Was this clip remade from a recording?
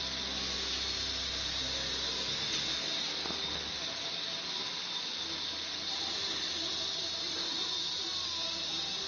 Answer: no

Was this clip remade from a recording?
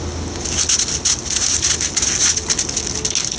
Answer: no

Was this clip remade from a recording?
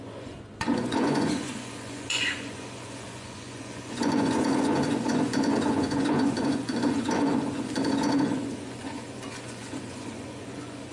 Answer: yes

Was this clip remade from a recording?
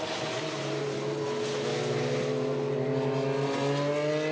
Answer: no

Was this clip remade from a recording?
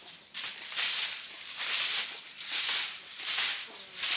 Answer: no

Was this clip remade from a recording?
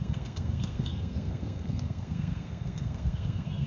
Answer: yes